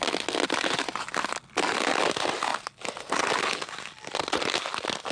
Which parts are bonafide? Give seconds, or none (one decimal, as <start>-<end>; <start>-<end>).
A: 0.0-5.1